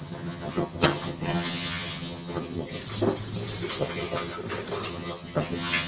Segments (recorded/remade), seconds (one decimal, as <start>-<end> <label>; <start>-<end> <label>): 0.0-2.8 remade; 2.8-3.8 recorded; 3.8-4.4 remade; 4.4-4.9 recorded; 4.9-5.9 remade

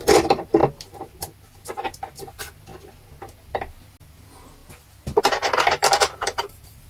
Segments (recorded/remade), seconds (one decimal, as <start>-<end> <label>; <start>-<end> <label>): 0.0-5.8 recorded; 5.8-6.9 remade